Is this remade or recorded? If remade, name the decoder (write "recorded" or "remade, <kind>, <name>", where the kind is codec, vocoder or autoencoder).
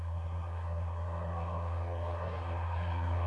remade, codec, SNAC